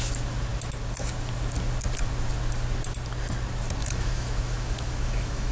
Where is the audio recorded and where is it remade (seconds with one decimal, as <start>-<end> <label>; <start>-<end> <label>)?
0.0-3.8 recorded; 3.8-5.5 remade